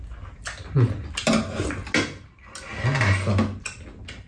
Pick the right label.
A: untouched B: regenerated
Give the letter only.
A